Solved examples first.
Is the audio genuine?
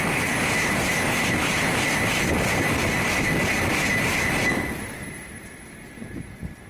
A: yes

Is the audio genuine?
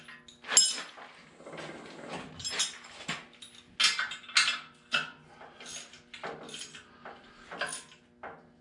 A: yes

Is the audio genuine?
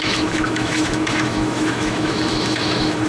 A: no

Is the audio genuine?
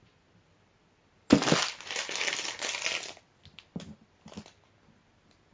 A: yes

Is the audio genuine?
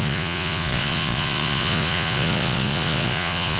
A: no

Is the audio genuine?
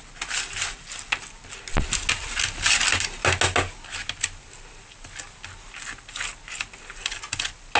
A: yes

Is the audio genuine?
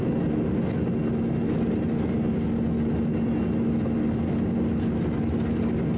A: yes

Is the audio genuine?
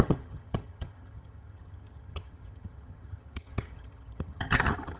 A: no